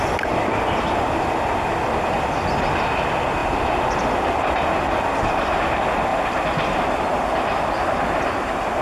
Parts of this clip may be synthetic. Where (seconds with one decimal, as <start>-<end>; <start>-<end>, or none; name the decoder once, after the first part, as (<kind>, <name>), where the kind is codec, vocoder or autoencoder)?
none